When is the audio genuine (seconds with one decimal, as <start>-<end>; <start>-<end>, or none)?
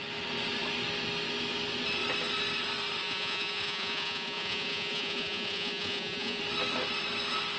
0.0-3.0; 6.4-7.6